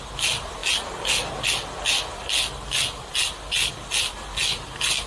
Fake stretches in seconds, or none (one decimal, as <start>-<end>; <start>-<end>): none